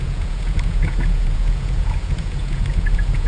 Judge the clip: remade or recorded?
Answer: remade